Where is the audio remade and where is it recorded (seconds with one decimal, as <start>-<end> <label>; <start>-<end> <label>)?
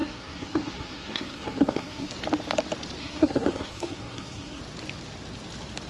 0.0-2.1 remade; 2.1-3.0 recorded; 3.0-4.6 remade; 4.6-5.9 recorded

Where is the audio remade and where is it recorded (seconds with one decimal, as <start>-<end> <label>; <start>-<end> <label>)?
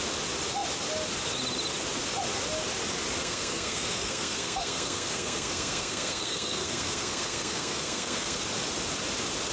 0.0-3.2 recorded; 3.2-8.4 remade; 8.4-9.5 recorded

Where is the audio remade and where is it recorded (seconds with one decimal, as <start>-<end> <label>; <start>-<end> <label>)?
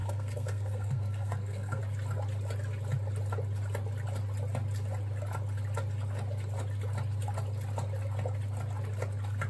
0.0-1.8 remade; 1.8-9.5 recorded